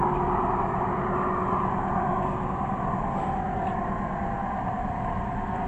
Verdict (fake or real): real